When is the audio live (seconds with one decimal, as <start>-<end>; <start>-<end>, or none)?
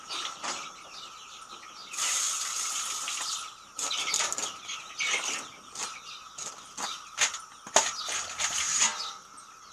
0.0-9.7